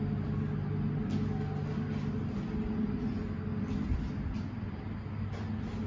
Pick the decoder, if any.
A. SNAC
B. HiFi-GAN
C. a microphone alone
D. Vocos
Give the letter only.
C